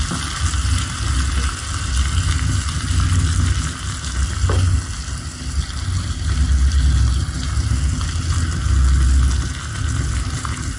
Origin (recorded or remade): recorded